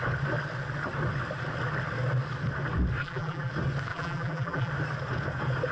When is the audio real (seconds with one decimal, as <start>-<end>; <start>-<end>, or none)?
0.0-3.0; 3.5-3.9; 4.7-5.7